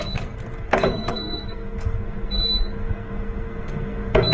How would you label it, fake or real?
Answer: fake